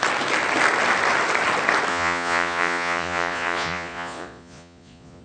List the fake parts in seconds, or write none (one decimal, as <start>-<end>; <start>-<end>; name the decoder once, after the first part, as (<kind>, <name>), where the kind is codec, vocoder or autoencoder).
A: 1.9-5.2 (vocoder, Vocos)